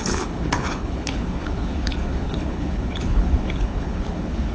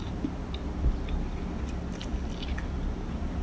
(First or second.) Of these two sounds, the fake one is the first